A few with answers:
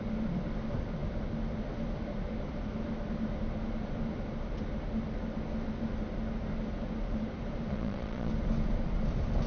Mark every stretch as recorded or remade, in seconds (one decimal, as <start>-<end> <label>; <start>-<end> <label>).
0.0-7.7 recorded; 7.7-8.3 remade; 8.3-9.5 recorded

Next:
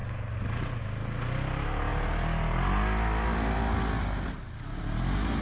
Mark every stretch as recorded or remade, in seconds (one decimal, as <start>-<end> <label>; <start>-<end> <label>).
0.0-5.4 recorded

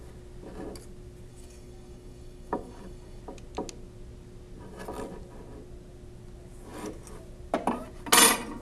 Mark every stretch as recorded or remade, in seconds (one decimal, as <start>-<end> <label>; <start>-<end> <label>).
0.0-1.3 recorded; 1.3-3.2 remade; 3.2-8.6 recorded

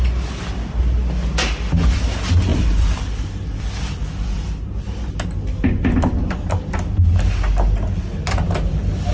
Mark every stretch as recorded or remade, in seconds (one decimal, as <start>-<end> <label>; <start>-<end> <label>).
0.0-2.5 recorded; 2.5-5.1 remade; 5.1-9.1 recorded